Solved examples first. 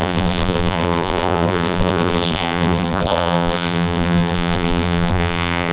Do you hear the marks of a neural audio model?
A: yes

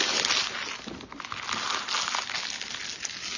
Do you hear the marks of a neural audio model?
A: no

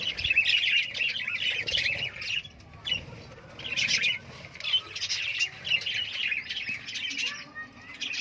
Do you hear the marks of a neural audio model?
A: no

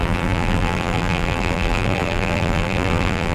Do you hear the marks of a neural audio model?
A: yes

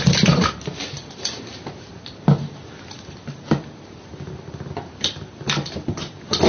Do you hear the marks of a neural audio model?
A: no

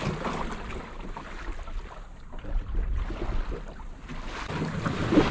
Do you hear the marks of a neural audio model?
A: no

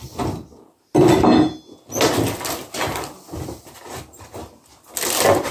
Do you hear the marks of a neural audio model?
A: no